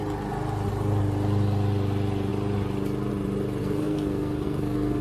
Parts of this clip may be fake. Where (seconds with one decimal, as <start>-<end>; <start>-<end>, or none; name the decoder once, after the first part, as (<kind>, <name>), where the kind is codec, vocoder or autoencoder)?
3.6-5.0 (codec, SNAC)